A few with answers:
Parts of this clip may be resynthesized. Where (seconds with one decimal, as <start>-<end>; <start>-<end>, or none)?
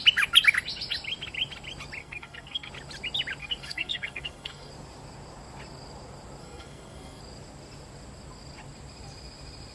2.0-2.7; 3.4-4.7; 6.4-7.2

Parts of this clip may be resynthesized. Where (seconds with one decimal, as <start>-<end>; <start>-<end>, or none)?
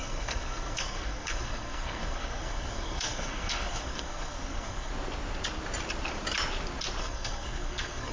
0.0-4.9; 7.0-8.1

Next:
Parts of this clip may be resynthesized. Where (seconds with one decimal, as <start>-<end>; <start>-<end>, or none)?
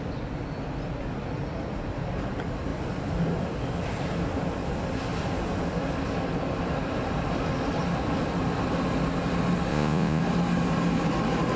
9.7-10.2